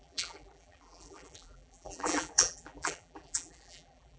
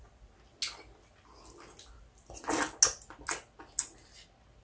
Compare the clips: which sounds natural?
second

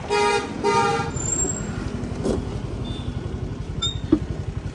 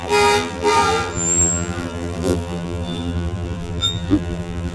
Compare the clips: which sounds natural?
first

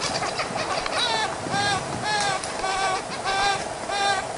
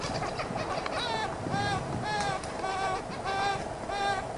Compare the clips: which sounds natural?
second